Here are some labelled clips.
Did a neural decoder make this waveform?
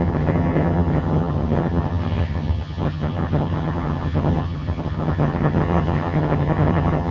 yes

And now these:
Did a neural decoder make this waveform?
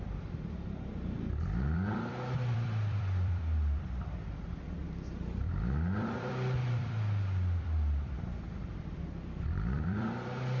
yes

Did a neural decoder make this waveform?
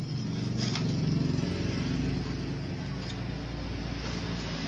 no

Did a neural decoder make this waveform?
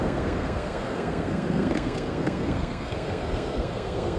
yes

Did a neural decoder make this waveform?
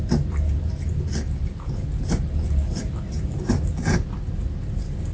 no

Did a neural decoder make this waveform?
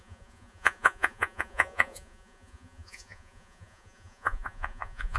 yes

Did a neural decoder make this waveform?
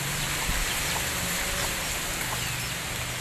no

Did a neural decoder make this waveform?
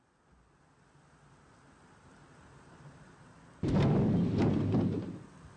no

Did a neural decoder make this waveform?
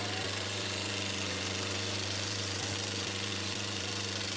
yes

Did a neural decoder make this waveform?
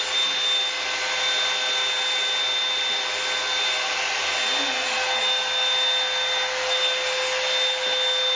no